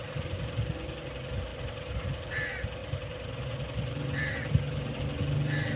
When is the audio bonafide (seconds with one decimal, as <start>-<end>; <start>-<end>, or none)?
0.0-1.5; 2.1-2.8; 5.0-5.8